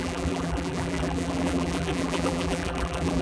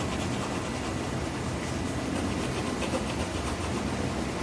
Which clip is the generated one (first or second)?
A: first